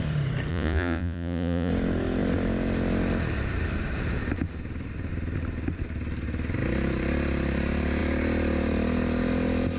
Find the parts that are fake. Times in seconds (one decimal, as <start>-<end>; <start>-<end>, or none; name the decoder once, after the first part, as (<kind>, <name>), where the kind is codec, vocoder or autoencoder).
0.5-1.7 (vocoder, Vocos)